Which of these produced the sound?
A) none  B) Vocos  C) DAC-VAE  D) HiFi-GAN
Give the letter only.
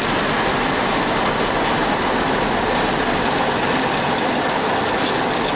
A